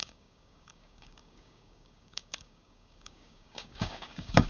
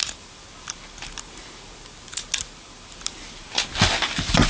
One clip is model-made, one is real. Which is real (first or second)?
second